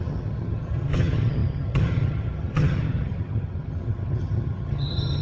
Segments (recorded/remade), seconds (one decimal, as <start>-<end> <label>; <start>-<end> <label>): 0.0-5.2 remade